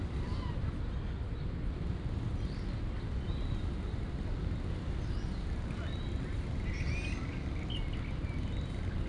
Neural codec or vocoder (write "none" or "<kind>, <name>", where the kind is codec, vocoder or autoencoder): none